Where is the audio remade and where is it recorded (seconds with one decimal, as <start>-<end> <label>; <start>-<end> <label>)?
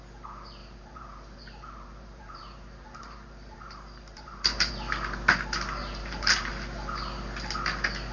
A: 0.0-0.6 recorded; 0.6-4.7 remade; 4.7-5.8 recorded; 5.8-6.5 remade; 6.5-8.1 recorded